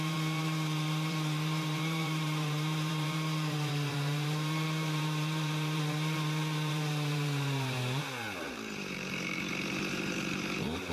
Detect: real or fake fake